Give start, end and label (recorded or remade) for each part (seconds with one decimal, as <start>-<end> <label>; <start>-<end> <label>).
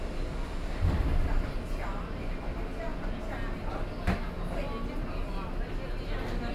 0.0-6.5 recorded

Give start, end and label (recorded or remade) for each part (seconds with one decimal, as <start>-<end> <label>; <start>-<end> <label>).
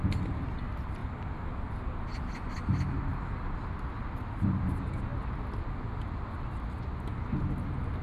0.0-8.0 recorded